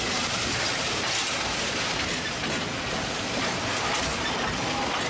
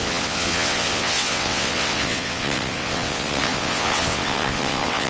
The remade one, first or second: second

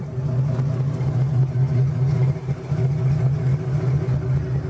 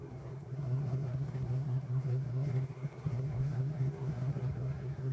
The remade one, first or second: second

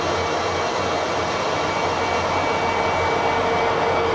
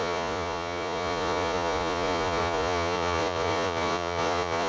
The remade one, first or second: second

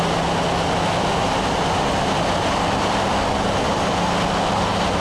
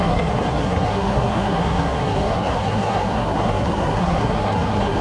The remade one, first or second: second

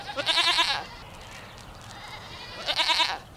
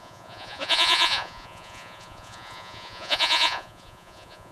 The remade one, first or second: second